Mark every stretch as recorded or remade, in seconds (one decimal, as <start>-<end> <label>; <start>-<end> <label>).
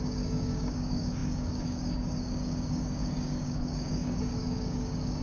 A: 0.0-5.2 remade